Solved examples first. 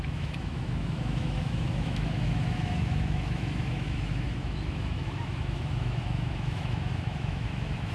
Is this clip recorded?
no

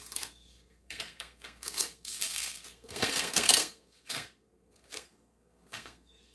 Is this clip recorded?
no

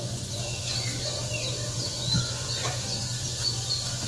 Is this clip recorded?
no